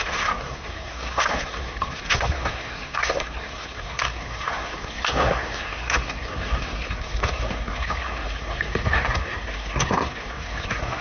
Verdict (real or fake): fake